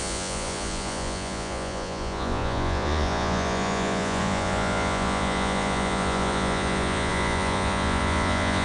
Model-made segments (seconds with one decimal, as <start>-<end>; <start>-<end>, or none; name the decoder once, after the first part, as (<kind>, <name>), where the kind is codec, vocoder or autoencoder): 0.0-8.6 (vocoder, Vocos)